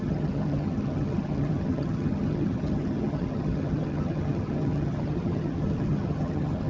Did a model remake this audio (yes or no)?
yes